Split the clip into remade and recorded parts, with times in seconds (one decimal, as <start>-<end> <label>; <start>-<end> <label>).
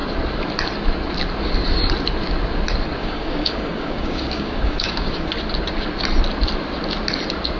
0.0-3.0 recorded; 3.0-5.3 remade; 5.3-7.6 recorded